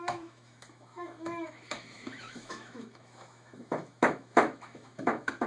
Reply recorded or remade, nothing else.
remade